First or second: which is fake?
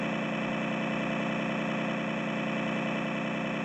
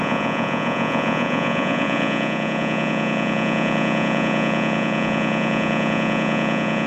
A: second